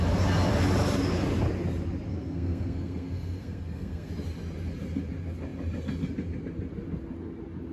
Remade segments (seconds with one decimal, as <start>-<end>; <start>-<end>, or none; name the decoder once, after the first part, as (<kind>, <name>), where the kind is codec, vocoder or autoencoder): 2.1-4.1 (codec, SNAC)